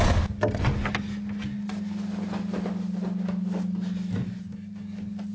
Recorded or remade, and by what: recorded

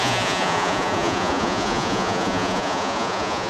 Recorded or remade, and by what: remade, vocoder, Vocos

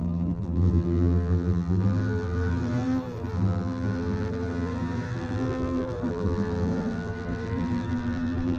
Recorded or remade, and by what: remade, vocoder, BigVGAN v2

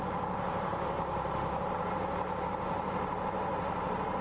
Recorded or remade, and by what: remade, vocoder, BigVGAN v2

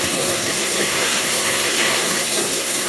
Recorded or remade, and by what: remade, codec, SNAC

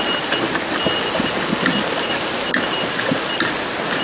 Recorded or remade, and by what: recorded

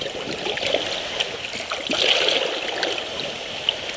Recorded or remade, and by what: recorded